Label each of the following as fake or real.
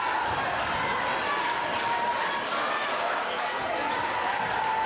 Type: real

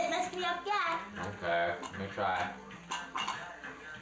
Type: real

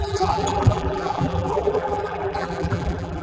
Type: fake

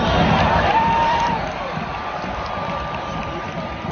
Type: fake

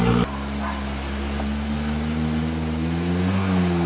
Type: real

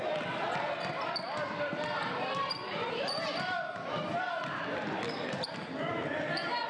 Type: fake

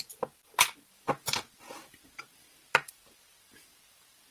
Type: fake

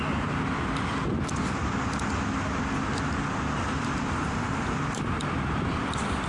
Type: real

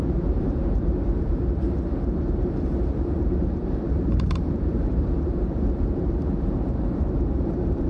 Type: fake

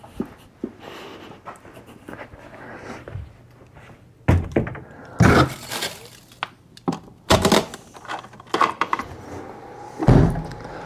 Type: real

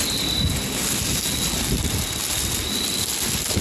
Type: real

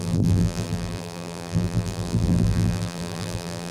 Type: fake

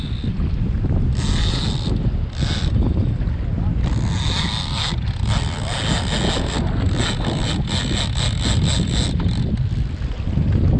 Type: real